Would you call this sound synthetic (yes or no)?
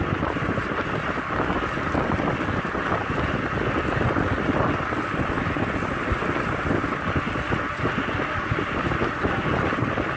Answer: no